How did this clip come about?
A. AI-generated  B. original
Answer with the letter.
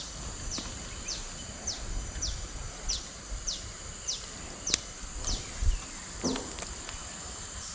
B